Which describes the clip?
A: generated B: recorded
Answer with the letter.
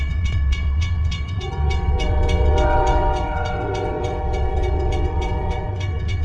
A